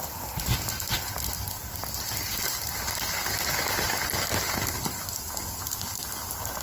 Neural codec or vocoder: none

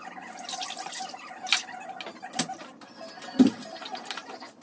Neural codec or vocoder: none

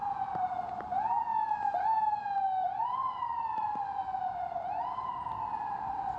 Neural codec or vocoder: none